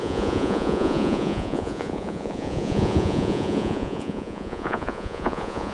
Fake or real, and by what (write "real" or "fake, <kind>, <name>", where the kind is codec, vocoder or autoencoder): fake, vocoder, Vocos